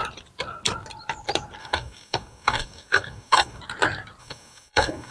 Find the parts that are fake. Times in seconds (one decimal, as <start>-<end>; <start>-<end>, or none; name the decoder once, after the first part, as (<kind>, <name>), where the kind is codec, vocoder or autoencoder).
1.6-3.6 (codec, DAC); 4.2-5.1